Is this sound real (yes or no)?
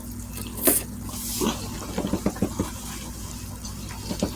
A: yes